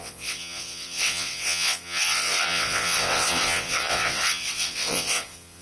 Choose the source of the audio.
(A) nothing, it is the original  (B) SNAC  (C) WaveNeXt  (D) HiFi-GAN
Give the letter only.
C